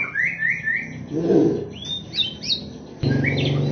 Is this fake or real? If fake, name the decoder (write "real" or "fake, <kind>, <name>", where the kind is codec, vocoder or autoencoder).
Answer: real